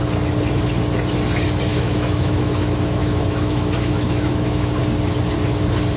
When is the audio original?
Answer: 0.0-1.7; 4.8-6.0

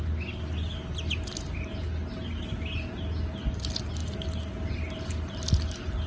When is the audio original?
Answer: 0.0-6.1

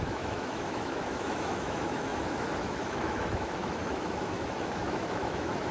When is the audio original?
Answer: none

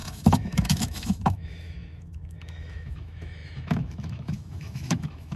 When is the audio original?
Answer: none

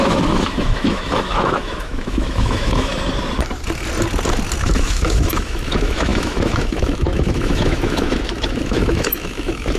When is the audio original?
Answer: 2.9-4.6

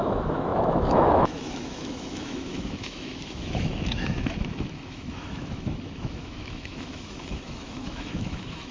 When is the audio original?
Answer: none